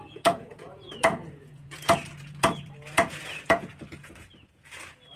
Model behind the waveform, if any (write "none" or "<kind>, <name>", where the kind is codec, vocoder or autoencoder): vocoder, Vocos